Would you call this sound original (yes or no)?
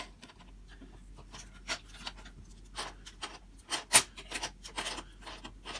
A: yes